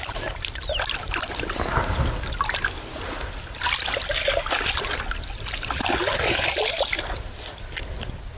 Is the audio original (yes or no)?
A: yes